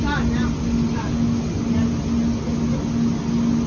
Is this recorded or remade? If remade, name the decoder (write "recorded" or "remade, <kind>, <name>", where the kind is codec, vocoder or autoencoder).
recorded